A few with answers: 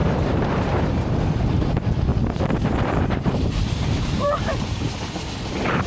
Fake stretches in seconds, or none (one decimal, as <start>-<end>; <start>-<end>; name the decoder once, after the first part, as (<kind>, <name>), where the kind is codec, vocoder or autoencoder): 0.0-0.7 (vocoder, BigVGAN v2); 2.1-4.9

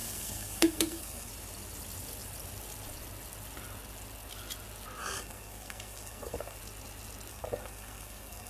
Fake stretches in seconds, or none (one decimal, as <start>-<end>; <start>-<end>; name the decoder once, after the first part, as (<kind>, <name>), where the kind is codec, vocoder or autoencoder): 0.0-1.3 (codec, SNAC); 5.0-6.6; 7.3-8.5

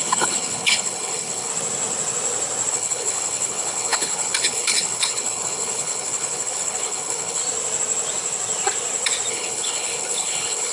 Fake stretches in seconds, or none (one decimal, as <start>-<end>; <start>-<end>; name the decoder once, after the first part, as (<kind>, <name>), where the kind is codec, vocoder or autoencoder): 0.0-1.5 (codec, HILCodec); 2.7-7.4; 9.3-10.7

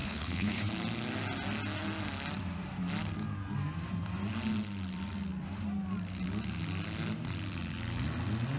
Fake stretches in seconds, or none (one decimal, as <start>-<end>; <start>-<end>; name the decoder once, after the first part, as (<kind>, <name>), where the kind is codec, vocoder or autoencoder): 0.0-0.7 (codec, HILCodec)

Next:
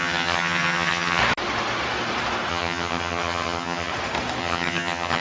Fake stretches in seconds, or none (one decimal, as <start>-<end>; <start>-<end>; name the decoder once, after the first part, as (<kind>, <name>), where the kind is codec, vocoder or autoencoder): 0.0-1.2 (vocoder, HiFi-GAN); 2.5-3.9; 4.4-5.2